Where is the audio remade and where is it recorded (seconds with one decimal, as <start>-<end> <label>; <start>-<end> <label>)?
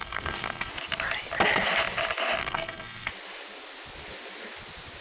0.0-0.7 remade; 0.7-2.4 recorded; 2.4-3.1 remade; 3.1-5.0 recorded